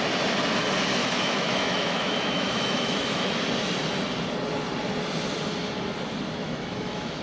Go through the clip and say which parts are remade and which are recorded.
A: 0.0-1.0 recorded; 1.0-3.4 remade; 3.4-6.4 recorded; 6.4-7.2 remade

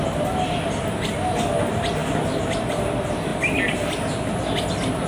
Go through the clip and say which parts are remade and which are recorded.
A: 0.0-5.1 recorded

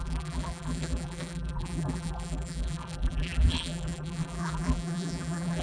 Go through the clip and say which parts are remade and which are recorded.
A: 0.0-5.6 remade

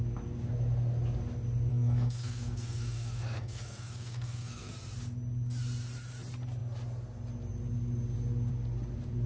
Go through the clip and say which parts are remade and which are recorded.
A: 0.0-1.7 recorded; 1.7-4.7 remade; 4.7-9.3 recorded

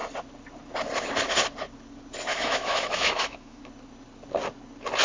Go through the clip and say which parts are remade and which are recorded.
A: 0.0-2.3 recorded; 2.3-3.6 remade; 3.6-5.0 recorded